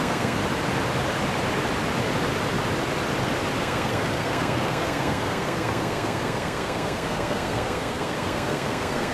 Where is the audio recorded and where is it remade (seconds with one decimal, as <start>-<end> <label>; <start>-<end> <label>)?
0.0-0.4 remade; 0.4-3.6 recorded; 3.6-9.1 remade